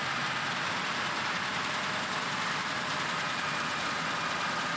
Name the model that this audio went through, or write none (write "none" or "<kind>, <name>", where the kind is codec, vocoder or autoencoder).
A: none